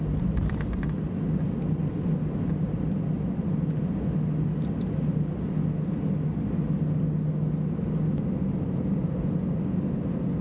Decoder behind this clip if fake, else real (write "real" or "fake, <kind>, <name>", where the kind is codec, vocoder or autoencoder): real